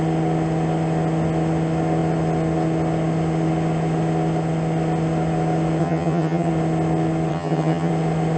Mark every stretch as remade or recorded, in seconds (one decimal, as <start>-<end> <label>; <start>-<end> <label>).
0.0-5.8 recorded; 5.8-6.5 remade; 6.5-7.3 recorded; 7.3-7.9 remade; 7.9-8.4 recorded